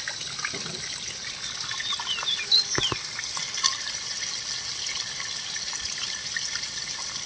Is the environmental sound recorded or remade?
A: recorded